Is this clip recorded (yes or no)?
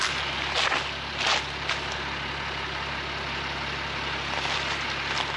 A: yes